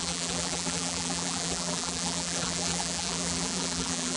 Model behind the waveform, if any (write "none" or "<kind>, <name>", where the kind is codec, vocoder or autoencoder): vocoder, BigVGAN v2